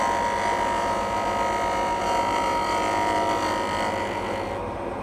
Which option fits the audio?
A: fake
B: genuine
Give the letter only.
B